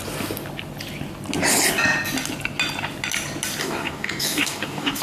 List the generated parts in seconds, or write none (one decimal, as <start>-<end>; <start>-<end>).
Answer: 3.6-5.0